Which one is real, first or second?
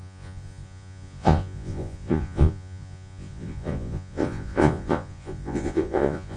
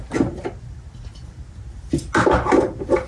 second